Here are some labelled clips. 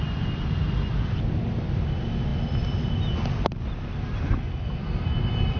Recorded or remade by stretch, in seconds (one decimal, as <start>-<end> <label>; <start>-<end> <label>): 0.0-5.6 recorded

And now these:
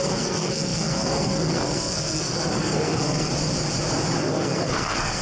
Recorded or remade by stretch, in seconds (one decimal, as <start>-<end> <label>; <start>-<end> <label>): 0.0-3.3 remade; 3.3-4.2 recorded; 4.2-5.2 remade

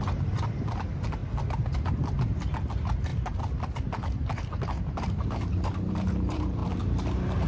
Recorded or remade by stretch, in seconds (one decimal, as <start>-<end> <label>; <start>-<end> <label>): 0.0-1.2 remade; 1.2-2.7 recorded; 2.7-7.5 remade